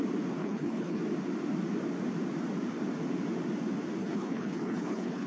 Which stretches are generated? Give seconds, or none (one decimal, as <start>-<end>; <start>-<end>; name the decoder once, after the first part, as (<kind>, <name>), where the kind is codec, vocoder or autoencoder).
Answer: 0.4-1.0 (codec, HILCodec); 4.0-5.3